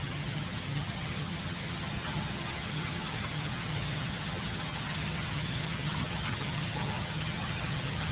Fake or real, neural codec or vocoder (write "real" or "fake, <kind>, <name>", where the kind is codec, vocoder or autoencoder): fake, vocoder, HiFi-GAN